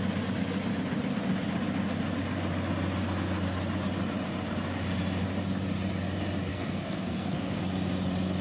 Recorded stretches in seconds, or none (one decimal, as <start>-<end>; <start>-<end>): 0.0-6.5; 7.6-8.4